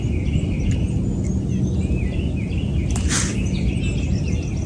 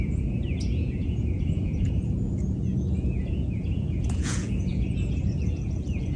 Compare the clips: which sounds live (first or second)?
first